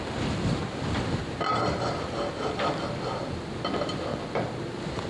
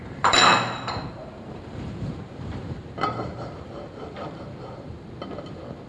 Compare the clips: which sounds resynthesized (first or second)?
second